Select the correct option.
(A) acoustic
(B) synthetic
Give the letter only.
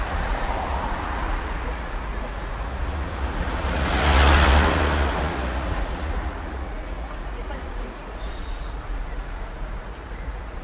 B